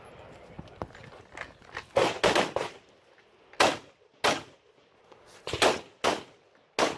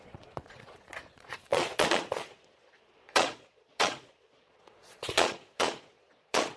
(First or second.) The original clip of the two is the first